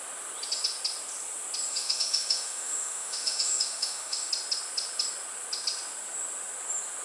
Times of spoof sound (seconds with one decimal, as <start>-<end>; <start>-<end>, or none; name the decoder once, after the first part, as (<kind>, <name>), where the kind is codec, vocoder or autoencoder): 1.7-4.3 (autoencoder, DAC-VAE)